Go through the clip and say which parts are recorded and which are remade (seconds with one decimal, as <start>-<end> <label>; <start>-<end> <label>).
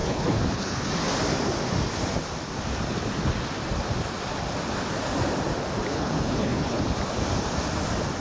0.0-0.9 remade; 0.9-5.9 recorded; 5.9-6.8 remade; 6.8-8.2 recorded